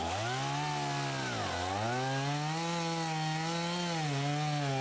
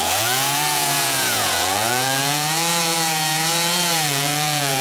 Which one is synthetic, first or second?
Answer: second